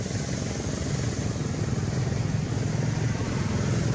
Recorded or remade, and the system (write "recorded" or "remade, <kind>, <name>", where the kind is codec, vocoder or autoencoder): recorded